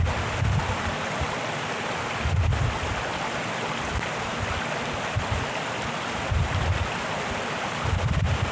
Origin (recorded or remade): recorded